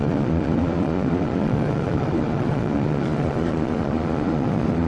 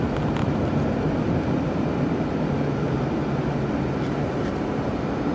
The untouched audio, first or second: second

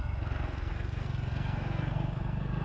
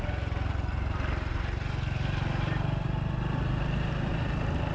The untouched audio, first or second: second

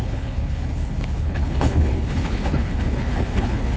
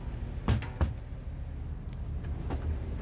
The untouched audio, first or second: second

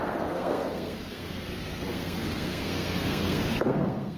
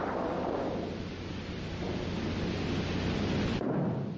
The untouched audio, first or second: second